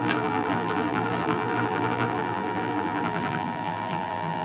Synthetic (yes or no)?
yes